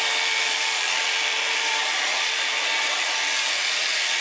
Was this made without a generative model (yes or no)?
no